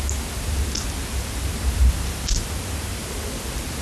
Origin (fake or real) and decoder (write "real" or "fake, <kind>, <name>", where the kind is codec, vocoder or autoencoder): real